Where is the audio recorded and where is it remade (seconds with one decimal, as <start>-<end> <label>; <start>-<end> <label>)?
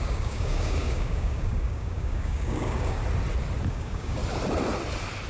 0.0-3.0 remade; 3.0-3.7 recorded; 3.7-4.2 remade; 4.2-5.3 recorded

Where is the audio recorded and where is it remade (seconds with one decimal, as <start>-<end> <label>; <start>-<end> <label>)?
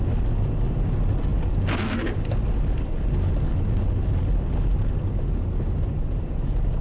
0.0-6.8 recorded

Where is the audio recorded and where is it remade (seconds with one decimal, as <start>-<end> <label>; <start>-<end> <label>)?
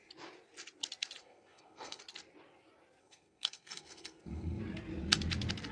0.0-1.2 recorded; 1.2-2.0 remade; 2.0-3.0 recorded; 3.0-4.6 remade; 4.6-5.7 recorded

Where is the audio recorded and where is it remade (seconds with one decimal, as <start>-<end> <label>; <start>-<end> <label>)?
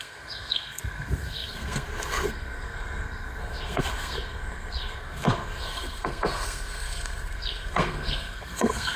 0.0-9.0 remade